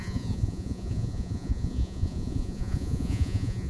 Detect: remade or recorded remade